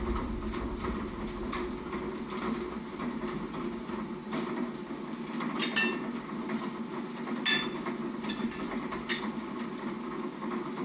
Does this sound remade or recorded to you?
recorded